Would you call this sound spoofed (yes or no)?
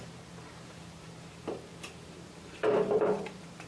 yes